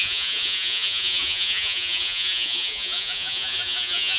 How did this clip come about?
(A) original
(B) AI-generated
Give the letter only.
B